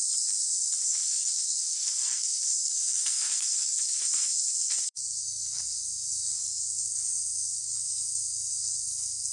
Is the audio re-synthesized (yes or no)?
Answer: yes